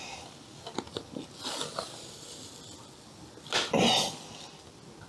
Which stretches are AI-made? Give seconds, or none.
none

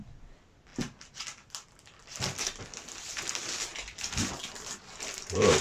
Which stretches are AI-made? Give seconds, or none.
none

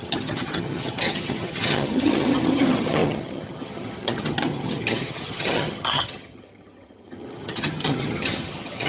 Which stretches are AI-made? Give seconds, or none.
0.0-8.9 (vocoder, HiFi-GAN)

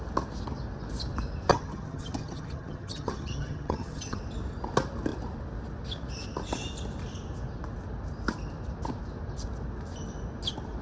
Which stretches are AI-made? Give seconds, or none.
1.5-4.2 (vocoder, HiFi-GAN)

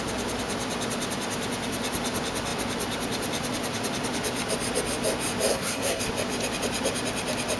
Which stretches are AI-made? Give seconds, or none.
5.5-6.0 (codec, SNAC)